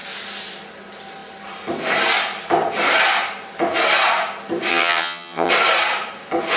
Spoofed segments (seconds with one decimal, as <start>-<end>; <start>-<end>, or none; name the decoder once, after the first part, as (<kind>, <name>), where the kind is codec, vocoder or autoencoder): 4.7-5.5 (vocoder, HiFi-GAN)